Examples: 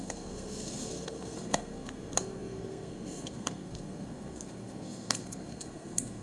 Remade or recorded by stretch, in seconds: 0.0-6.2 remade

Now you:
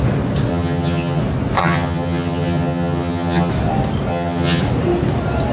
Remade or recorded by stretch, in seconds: 0.0-0.5 recorded; 0.5-1.2 remade; 1.2-1.6 recorded; 1.6-3.5 remade; 3.5-4.1 recorded; 4.1-4.6 remade; 4.6-5.5 recorded

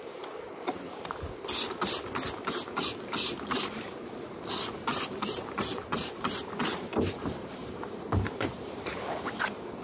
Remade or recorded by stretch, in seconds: 0.0-4.9 recorded; 4.9-8.9 remade; 8.9-9.8 recorded